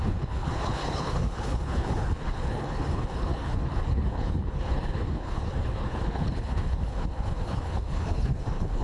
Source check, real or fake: fake